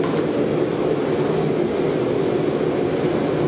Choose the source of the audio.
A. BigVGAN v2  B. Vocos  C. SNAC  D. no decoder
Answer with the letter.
D